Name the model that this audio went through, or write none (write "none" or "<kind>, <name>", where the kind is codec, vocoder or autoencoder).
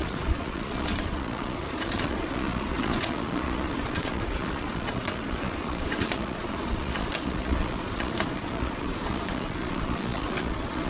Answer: vocoder, Vocos